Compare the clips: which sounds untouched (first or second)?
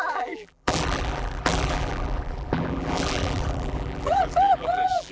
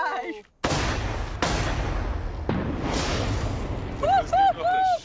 second